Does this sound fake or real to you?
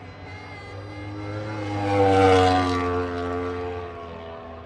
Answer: real